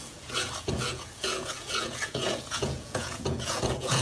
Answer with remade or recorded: remade